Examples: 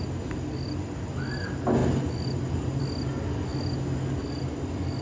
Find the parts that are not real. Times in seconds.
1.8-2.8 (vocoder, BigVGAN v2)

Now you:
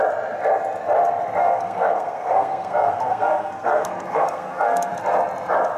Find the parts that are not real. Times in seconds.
1.4-4.9 (codec, SNAC)

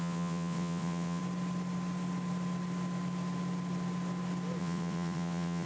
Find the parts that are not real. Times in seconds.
0.0-1.2 (vocoder, WaveNeXt); 4.6-5.7

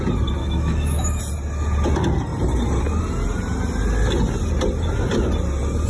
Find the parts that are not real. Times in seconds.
0.4-1.2 (autoencoder, DAC-VAE)

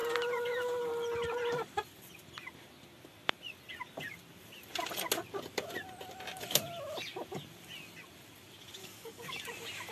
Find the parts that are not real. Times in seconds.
8.8-9.4 (codec, DAC)

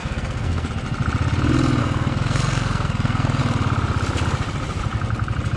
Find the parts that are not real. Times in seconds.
0.0-0.7 (codec, SNAC); 1.8-3.4

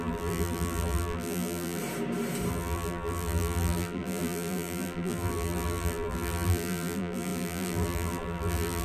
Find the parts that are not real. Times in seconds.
0.0-1.8 (vocoder, BigVGAN v2); 2.5-8.8

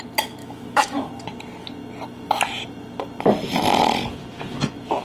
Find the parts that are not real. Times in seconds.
0.4-1.1 (autoencoder, DAC-VAE)